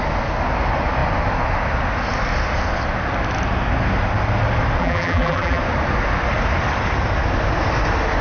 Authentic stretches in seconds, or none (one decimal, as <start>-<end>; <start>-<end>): 0.0-4.8; 5.6-8.2